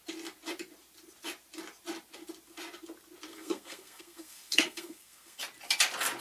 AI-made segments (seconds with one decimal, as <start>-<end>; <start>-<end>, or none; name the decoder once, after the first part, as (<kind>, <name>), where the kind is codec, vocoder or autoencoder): 3.3-5.4 (codec, SNAC)